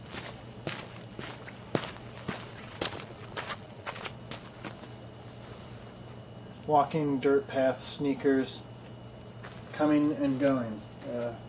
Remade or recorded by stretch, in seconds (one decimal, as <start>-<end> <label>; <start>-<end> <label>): 0.0-2.5 recorded; 2.5-4.1 remade; 4.1-11.5 recorded